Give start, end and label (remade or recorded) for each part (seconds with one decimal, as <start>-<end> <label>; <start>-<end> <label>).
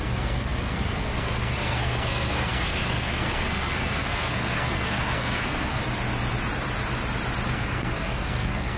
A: 0.0-5.8 remade; 5.8-7.5 recorded; 7.5-8.8 remade